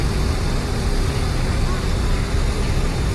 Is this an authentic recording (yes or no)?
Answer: yes